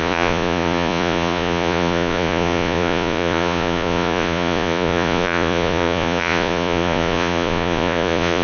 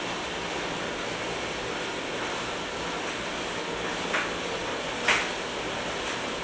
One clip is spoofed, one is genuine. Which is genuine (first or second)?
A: second